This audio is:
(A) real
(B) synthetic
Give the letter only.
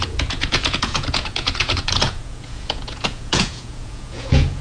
B